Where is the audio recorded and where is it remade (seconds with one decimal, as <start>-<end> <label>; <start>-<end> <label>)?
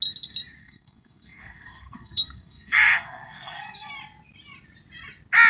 0.0-0.6 recorded; 0.6-3.9 remade; 3.9-5.5 recorded